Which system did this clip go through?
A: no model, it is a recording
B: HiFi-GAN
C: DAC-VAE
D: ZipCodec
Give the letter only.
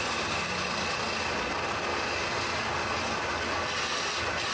A